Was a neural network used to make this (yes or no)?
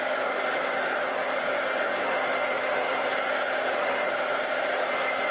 no